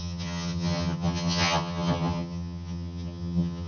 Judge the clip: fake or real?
fake